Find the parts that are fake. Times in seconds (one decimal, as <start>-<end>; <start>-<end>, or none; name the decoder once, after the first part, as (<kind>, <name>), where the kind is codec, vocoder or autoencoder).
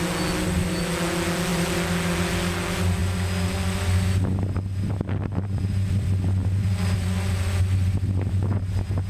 none